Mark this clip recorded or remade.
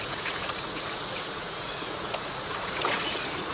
remade